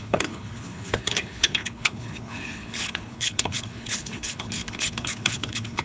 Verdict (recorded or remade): remade